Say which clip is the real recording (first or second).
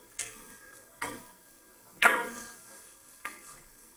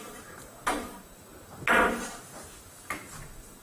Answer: second